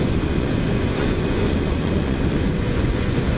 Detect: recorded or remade remade